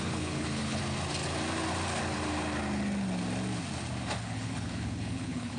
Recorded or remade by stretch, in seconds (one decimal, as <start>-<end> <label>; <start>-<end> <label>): 0.0-0.8 remade; 0.8-4.2 recorded; 4.2-5.6 remade